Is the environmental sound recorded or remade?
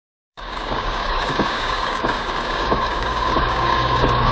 remade